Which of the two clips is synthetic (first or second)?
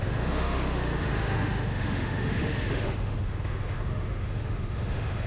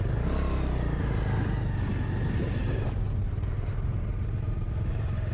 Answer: first